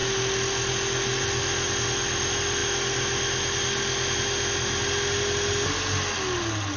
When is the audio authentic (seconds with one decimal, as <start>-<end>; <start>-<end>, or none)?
0.0-6.8